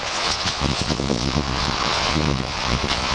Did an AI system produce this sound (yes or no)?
yes